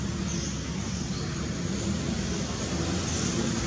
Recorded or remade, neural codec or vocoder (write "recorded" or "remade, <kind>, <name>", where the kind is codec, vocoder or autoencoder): recorded